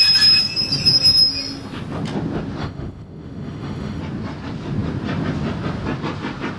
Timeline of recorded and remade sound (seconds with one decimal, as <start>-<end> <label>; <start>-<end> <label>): 0.0-2.6 recorded; 2.6-4.0 remade; 4.0-6.6 recorded